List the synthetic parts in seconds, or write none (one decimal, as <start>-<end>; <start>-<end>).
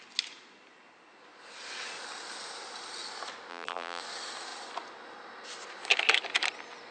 3.5-4.0